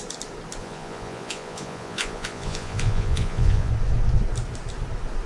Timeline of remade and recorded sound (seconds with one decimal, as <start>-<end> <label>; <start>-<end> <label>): 0.0-0.6 recorded; 0.6-3.7 remade; 3.7-5.3 recorded